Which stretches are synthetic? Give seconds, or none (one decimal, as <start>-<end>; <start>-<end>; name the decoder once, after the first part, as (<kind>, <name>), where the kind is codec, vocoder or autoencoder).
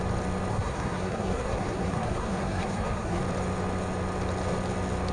0.5-3.2 (codec, SNAC)